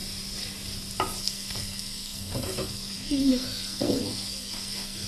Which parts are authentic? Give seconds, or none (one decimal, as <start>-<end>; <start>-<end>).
0.0-1.2

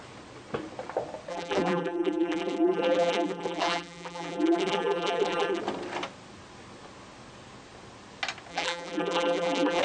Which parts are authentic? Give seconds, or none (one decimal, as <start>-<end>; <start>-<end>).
0.0-1.3; 5.6-8.5

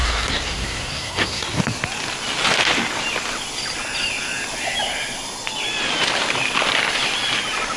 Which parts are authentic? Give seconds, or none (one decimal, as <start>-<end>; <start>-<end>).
1.6-7.8

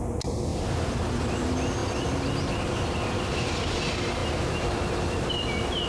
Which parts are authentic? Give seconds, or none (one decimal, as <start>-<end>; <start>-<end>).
0.0-5.9

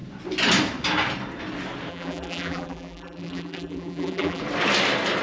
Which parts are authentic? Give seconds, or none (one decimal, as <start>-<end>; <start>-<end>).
0.0-1.9; 4.4-5.2

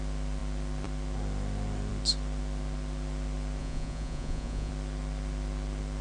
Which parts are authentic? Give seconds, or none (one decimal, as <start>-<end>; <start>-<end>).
0.0-3.6; 4.7-6.0

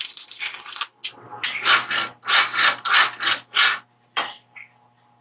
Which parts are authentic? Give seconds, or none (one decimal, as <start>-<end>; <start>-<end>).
0.0-5.2